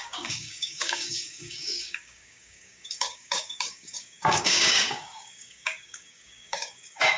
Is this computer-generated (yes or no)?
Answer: yes